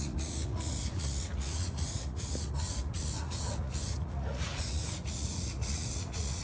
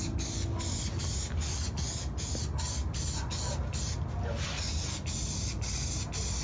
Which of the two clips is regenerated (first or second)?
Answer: first